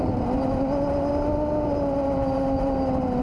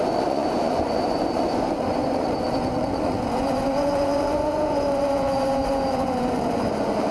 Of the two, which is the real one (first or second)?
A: first